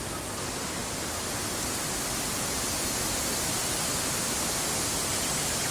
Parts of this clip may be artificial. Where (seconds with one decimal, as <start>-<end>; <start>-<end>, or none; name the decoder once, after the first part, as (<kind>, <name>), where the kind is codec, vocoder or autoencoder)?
none